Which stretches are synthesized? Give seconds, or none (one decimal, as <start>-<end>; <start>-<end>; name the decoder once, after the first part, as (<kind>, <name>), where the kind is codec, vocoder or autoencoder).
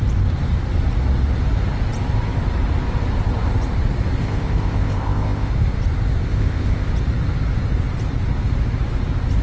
4.2-5.5 (codec, ZipCodec); 6.3-6.9